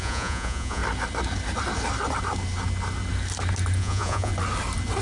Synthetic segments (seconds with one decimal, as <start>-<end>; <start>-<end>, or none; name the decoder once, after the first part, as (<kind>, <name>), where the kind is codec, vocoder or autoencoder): 0.0-0.8 (vocoder, Vocos); 3.8-4.3